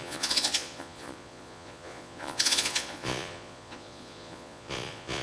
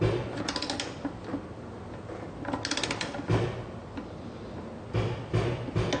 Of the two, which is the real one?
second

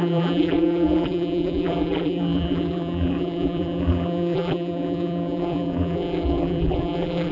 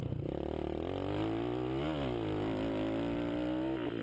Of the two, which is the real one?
second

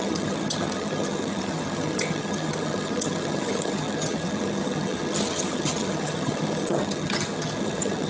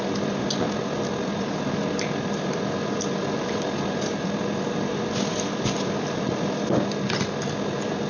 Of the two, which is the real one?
second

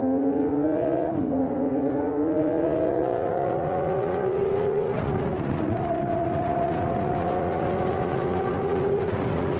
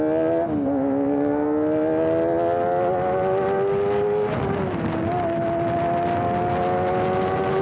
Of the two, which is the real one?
second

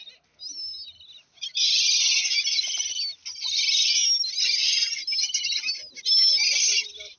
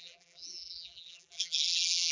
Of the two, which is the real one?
first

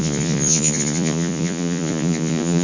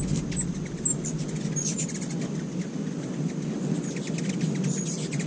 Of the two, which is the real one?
second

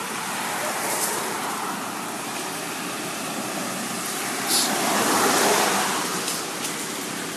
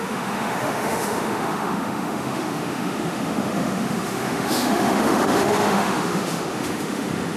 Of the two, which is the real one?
first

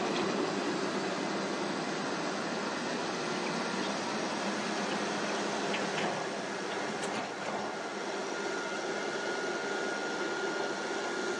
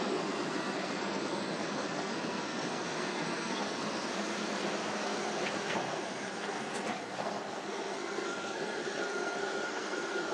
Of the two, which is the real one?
first